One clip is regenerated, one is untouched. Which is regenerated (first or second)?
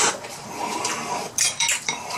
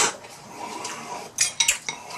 first